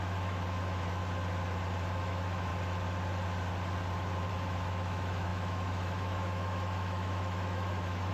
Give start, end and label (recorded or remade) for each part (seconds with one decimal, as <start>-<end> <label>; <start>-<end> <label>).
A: 0.0-1.0 remade; 1.0-2.0 recorded; 2.0-2.5 remade; 2.5-4.3 recorded; 4.3-8.1 remade